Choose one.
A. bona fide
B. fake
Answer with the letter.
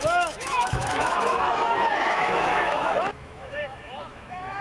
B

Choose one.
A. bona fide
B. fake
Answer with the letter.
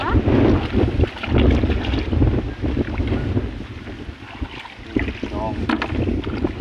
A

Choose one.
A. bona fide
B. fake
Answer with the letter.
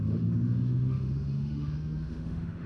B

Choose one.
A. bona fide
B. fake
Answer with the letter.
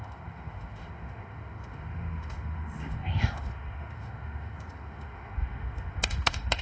B